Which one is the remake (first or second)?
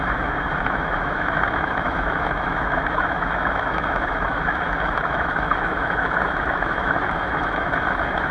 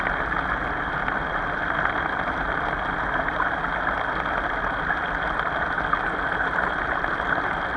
first